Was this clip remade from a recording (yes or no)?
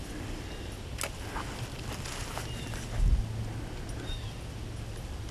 no